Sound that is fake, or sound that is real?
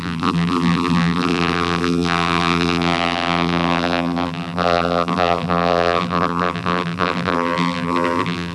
fake